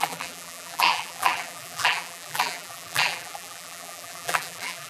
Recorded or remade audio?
remade